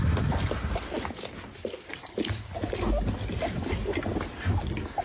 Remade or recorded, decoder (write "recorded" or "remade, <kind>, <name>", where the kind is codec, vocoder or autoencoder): recorded